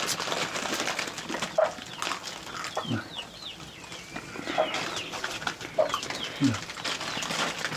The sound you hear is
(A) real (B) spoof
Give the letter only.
A